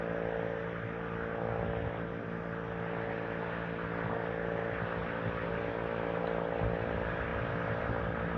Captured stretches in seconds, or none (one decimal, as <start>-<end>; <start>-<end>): 0.0-8.4